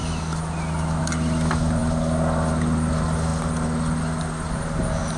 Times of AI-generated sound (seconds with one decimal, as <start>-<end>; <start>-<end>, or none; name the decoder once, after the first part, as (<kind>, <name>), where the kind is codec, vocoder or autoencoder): none